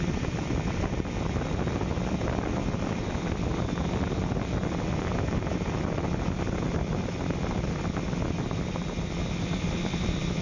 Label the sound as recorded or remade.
recorded